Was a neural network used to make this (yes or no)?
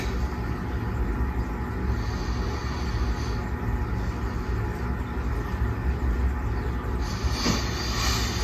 no